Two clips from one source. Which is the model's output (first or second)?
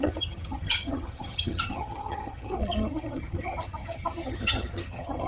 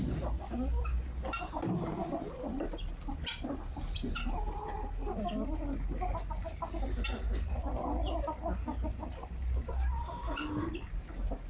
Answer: first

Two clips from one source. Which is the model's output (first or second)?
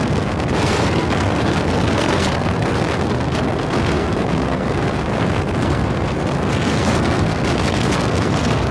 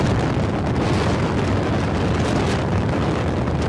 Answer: first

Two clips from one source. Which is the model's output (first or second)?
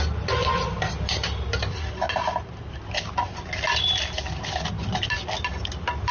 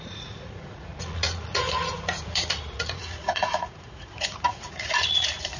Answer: second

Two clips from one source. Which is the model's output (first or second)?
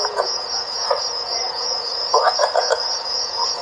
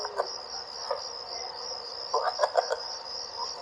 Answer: first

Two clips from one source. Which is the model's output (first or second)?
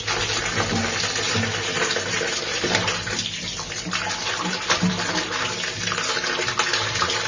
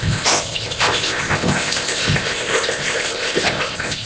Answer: second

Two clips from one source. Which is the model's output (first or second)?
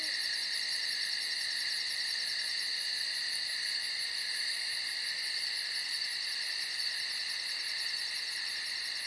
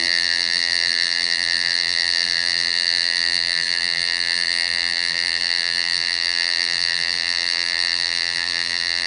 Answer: second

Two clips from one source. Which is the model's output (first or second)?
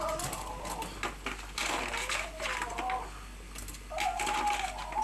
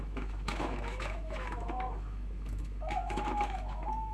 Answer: second